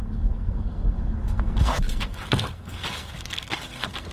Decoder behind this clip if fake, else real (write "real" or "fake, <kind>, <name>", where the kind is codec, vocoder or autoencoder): fake, codec, SNAC